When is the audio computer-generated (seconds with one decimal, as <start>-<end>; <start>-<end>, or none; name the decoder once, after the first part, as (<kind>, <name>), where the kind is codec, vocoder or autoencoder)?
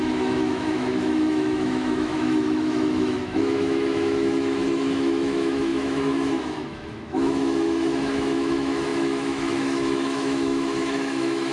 0.0-11.5 (autoencoder, DAC-VAE)